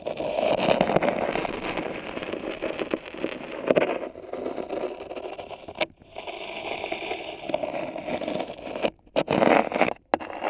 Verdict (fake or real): real